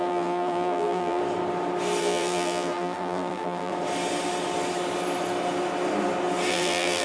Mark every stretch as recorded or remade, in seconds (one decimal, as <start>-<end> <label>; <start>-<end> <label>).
0.0-1.2 remade; 1.2-2.0 recorded; 2.0-3.7 remade; 3.7-6.5 recorded; 6.5-7.0 remade